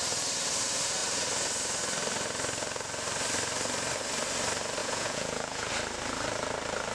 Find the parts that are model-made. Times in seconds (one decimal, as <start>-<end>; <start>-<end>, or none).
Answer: 4.8-5.7